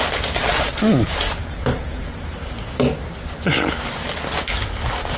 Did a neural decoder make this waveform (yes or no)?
no